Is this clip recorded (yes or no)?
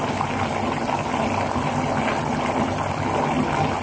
yes